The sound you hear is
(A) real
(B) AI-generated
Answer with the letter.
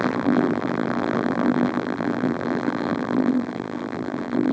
B